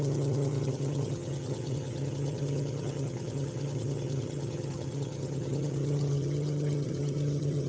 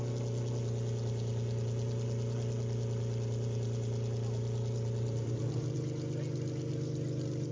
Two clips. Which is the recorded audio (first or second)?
second